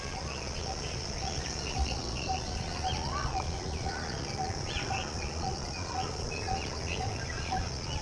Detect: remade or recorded remade